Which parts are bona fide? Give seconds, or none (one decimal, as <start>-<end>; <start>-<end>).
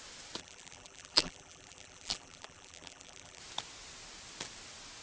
0.0-0.4; 3.4-5.0